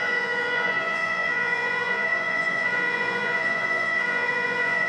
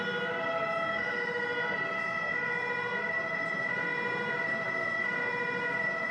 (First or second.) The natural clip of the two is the second